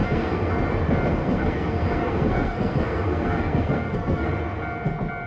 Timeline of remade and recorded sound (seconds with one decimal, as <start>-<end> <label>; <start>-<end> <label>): 0.0-0.5 remade; 0.5-1.1 recorded; 1.1-4.3 remade; 4.3-5.3 recorded